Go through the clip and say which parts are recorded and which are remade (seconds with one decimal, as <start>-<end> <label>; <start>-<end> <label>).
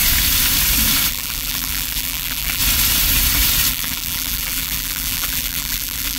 0.0-1.1 recorded; 1.1-2.6 remade; 2.6-3.7 recorded; 3.7-6.2 remade